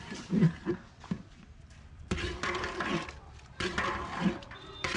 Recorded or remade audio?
remade